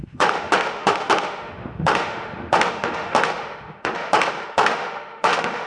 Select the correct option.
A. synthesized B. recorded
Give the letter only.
A